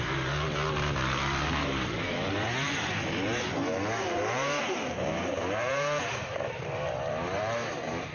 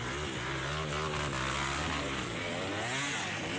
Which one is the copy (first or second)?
first